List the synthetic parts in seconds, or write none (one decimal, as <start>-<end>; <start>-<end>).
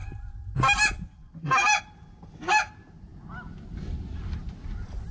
none